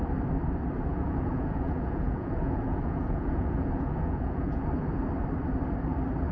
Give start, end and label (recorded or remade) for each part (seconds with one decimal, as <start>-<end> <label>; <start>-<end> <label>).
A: 0.0-0.9 recorded; 0.9-4.7 remade; 4.7-6.3 recorded